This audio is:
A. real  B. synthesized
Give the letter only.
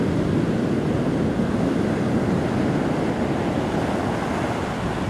A